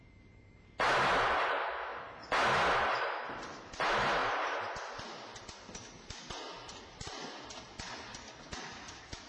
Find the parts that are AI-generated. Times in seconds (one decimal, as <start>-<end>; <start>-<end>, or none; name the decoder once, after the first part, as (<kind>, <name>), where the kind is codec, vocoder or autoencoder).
none